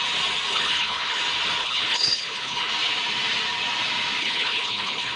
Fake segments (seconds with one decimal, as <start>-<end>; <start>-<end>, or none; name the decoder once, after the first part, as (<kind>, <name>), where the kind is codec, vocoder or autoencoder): 0.5-1.2 (codec, HILCodec); 1.6-2.7; 4.2-5.2